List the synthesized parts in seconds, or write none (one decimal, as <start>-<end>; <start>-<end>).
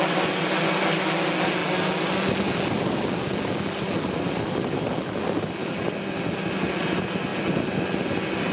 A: none